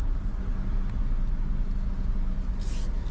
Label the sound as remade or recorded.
recorded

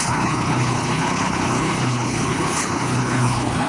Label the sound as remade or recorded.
remade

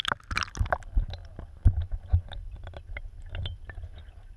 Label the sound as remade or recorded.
recorded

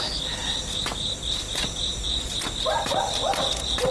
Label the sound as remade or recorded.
recorded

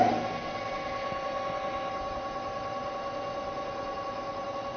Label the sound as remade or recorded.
recorded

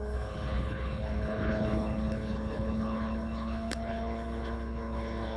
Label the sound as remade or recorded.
remade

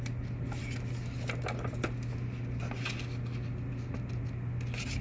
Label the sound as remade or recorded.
recorded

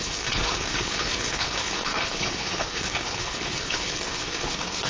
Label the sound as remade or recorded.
remade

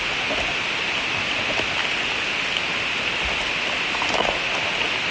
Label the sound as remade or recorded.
recorded